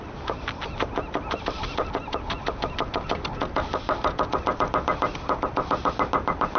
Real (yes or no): yes